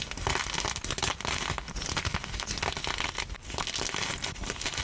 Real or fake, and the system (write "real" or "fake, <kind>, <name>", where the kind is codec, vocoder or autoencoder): real